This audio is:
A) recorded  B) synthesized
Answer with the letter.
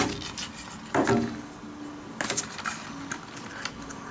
A